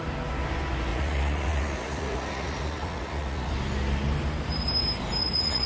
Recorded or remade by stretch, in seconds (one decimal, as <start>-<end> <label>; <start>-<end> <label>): 0.0-0.9 recorded; 0.9-3.5 remade; 3.5-5.2 recorded; 5.2-5.7 remade